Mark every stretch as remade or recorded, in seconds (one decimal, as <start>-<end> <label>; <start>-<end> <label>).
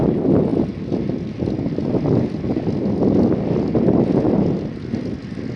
0.0-5.6 recorded